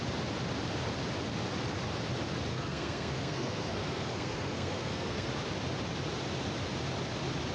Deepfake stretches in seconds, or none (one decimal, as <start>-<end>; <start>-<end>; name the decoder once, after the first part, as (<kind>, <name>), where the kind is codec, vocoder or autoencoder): 2.5-5.3 (codec, SNAC)